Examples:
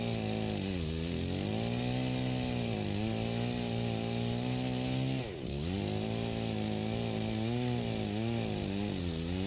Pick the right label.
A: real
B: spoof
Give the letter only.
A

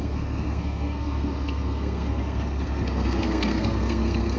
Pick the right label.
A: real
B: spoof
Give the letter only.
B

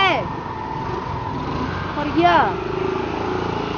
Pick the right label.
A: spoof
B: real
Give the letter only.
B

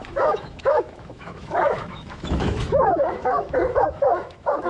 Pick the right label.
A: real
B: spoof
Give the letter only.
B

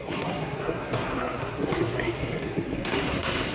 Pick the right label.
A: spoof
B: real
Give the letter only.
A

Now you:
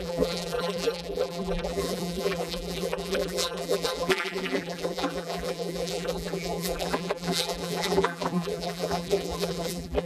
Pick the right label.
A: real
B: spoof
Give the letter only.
B